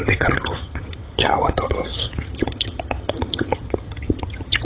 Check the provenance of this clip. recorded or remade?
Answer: remade